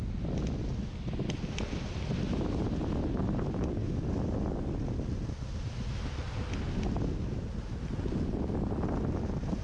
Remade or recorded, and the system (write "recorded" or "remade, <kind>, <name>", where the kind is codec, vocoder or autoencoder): recorded